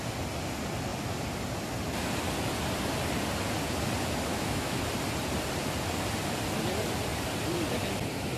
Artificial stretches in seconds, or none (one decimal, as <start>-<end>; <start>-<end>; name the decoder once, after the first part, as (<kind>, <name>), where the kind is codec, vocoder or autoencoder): 4.3-4.8 (autoencoder, DAC-VAE)